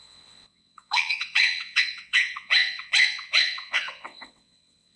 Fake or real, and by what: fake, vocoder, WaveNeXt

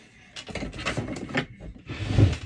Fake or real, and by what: real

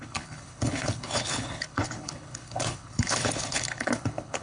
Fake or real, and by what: fake, codec, HILCodec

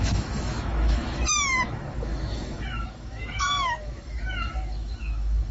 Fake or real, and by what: fake, autoencoder, DAC-VAE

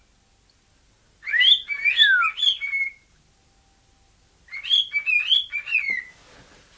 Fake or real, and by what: real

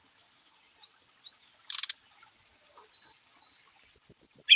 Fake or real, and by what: real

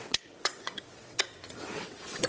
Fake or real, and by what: fake, vocoder, WaveNeXt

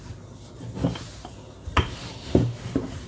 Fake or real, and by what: real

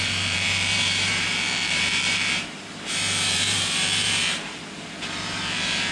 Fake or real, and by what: fake, vocoder, BigVGAN v2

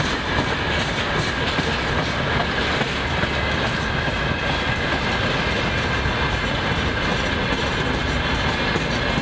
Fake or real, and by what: real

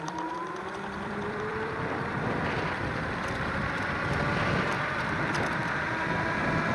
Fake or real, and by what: fake, vocoder, BigVGAN v2